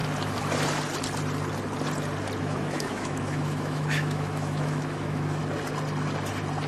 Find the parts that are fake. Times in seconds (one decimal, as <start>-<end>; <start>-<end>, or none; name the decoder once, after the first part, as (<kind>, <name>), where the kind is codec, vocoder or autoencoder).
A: 2.4-5.4 (autoencoder, DAC-VAE)